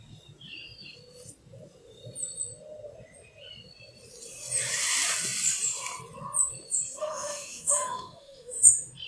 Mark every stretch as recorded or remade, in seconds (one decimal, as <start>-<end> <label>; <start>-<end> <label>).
0.0-7.0 recorded; 7.0-8.7 remade; 8.7-9.1 recorded